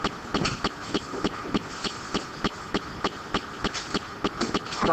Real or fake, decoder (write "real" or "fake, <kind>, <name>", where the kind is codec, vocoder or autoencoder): real